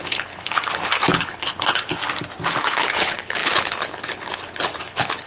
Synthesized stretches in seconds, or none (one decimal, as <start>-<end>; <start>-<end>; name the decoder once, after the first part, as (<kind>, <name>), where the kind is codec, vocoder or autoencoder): 0.0-2.0 (codec, HILCodec); 2.6-5.3